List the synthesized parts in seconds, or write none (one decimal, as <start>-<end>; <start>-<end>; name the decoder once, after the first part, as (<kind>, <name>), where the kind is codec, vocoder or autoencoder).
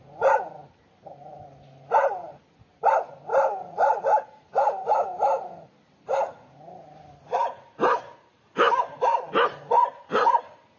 none